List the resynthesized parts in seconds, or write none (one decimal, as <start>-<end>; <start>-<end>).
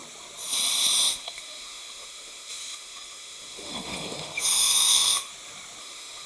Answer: 1.1-5.3; 5.8-6.3